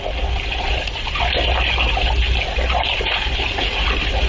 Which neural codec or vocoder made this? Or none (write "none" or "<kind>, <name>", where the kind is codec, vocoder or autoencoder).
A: none